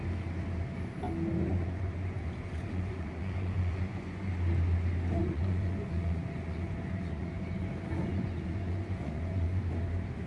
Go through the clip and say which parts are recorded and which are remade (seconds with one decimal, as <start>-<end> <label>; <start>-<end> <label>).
0.0-1.5 recorded; 1.5-4.3 remade; 4.3-5.2 recorded; 5.2-7.7 remade; 7.7-8.1 recorded; 8.1-9.6 remade; 9.6-10.3 recorded